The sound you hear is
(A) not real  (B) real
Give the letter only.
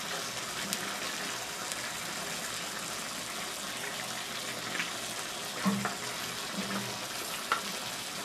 B